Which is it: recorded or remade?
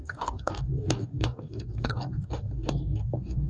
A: remade